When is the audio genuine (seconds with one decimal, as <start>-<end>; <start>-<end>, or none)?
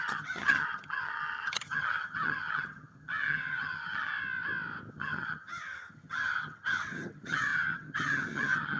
4.1-4.9